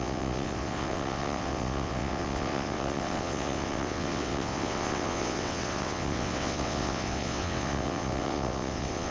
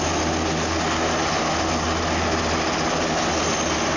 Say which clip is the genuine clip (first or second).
second